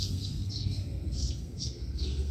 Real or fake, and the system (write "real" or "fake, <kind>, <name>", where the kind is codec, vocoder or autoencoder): fake, codec, SNAC